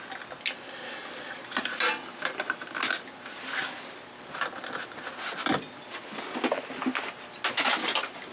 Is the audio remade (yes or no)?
no